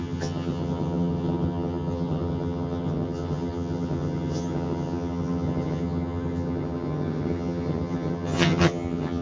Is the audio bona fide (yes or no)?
no